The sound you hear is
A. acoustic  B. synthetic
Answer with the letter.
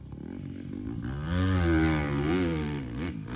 A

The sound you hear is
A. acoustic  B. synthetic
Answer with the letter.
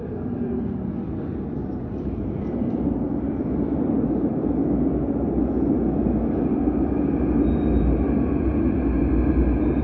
A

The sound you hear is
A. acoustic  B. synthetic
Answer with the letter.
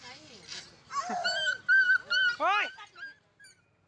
A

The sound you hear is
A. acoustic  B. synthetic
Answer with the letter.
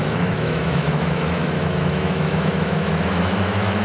B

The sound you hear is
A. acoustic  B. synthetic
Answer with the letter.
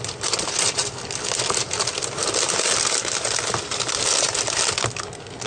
A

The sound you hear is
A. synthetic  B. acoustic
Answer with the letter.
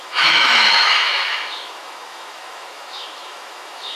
A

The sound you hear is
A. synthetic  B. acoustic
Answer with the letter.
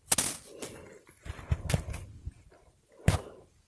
B